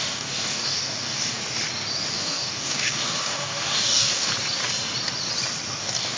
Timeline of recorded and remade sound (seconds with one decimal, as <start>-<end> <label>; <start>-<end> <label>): 0.0-1.4 remade; 1.4-2.1 recorded; 2.1-4.3 remade; 4.3-5.8 recorded; 5.8-6.2 remade

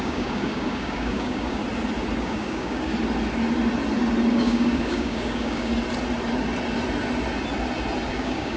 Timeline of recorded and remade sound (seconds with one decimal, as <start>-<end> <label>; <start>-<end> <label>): 0.0-1.6 remade; 1.6-2.2 recorded; 2.2-2.9 remade; 2.9-4.3 recorded; 4.3-5.7 remade; 5.7-8.1 recorded; 8.1-8.6 remade

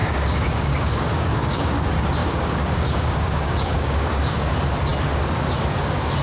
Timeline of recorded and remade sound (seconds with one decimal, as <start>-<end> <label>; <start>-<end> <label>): 0.0-1.7 remade; 1.7-2.2 recorded; 2.2-4.5 remade; 4.5-6.2 recorded

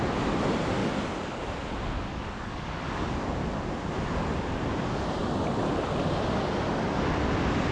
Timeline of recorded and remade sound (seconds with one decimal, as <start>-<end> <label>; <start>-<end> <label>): 0.0-0.8 recorded; 0.8-1.4 remade; 1.4-2.1 recorded; 2.1-3.1 remade; 3.1-7.7 recorded